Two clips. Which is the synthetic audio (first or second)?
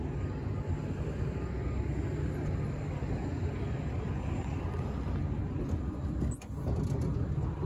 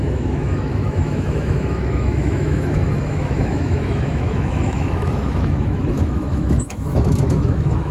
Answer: second